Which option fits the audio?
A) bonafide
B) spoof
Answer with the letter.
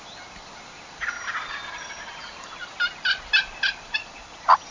A